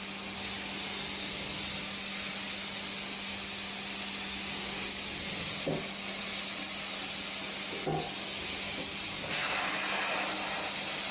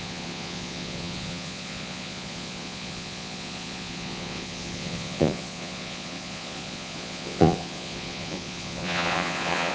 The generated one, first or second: second